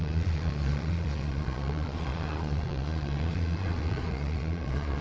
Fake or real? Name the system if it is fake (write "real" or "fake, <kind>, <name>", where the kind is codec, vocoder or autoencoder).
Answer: fake, vocoder, Vocos